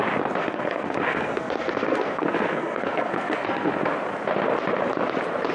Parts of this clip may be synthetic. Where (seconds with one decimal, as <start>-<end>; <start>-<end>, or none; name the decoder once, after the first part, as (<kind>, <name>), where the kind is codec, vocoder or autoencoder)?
0.4-3.7 (codec, SNAC)